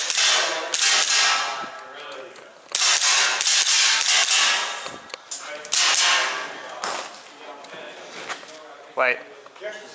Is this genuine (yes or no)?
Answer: yes